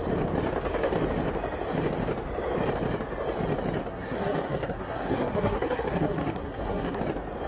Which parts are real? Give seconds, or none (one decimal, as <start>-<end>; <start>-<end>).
0.0-3.8; 7.0-7.5